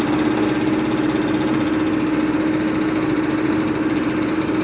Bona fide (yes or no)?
yes